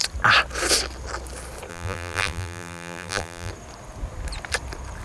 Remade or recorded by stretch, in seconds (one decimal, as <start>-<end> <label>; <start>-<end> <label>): 0.0-1.7 recorded; 1.7-3.5 remade; 3.5-5.0 recorded